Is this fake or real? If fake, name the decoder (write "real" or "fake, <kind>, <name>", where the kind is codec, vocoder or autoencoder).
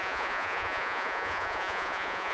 fake, vocoder, Vocos